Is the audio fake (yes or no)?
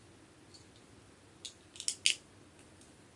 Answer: no